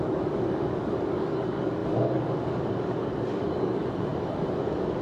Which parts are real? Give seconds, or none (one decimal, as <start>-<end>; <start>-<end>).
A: none